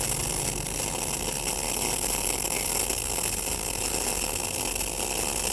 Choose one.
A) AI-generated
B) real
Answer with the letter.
B